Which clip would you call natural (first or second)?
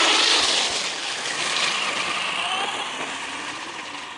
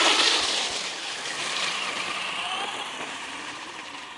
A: first